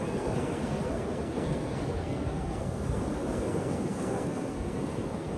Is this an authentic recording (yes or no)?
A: no